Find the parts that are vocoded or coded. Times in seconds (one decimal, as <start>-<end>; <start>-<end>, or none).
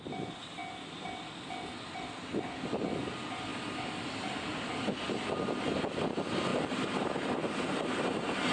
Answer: 6.5-8.5